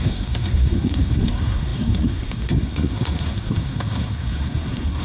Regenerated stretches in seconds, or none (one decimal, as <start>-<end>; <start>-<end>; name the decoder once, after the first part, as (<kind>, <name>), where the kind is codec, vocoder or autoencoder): 0.0-5.0 (codec, SNAC)